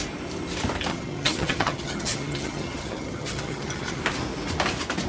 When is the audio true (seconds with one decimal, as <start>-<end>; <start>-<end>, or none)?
0.0-0.9; 4.0-5.1